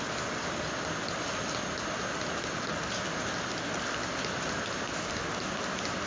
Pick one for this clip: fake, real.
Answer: real